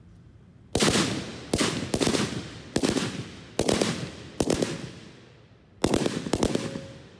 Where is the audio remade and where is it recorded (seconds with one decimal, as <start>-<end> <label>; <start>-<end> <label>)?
0.0-7.2 recorded